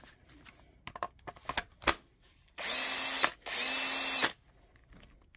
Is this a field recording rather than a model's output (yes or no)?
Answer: yes